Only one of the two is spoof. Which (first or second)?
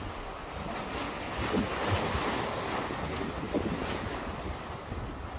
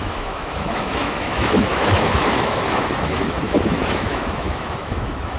second